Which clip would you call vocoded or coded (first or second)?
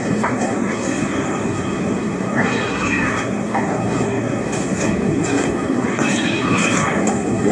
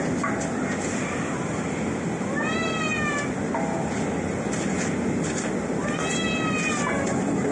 first